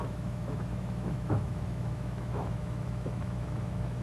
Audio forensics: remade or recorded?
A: remade